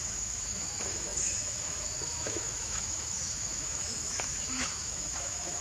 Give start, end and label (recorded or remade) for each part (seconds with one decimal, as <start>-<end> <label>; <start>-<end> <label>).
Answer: 0.0-5.6 remade